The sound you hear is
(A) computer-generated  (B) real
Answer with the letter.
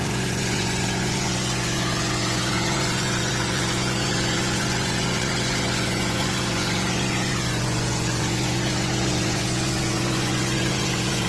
A